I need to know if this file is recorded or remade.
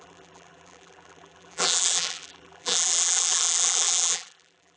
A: remade